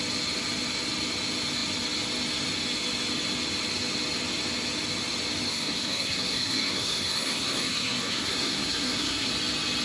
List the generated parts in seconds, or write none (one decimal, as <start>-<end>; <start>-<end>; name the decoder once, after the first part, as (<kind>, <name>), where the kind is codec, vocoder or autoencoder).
5.5-9.3 (codec, SNAC)